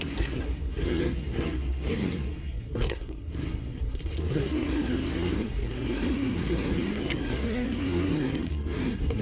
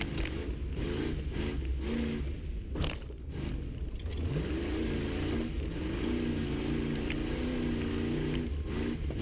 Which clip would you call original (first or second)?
second